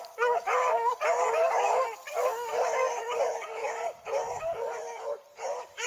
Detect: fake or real fake